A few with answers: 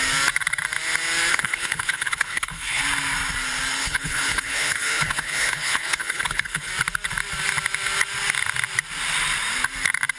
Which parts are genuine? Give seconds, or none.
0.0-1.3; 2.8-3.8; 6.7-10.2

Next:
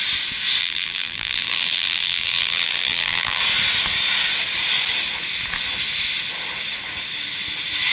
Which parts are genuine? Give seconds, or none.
0.0-0.6; 3.4-7.9

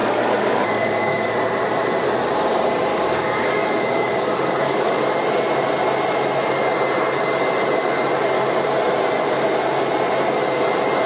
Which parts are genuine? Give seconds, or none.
1.3-2.9; 5.1-11.1

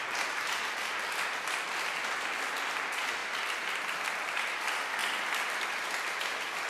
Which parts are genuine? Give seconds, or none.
0.0-6.7

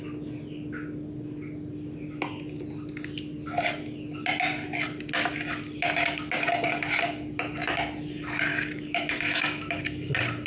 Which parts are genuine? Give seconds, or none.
0.0-8.5; 9.8-10.5

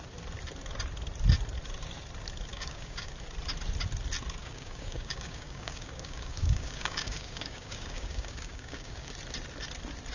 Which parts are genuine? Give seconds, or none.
0.0-2.5; 3.1-4.4; 9.1-10.1

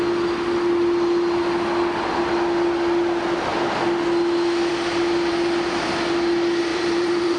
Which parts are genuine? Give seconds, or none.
0.0-6.7

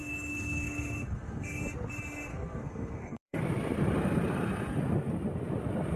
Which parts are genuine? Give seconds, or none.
1.6-2.3; 3.4-6.0